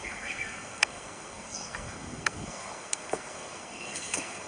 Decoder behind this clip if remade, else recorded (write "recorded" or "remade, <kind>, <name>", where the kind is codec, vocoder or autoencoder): remade, codec, SNAC